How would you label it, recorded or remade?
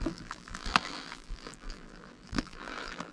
remade